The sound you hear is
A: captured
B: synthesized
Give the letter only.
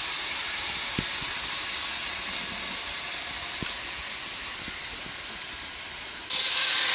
A